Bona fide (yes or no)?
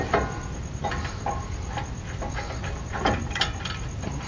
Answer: yes